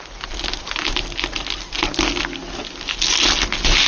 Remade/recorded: recorded